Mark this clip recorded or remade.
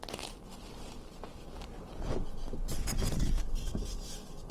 remade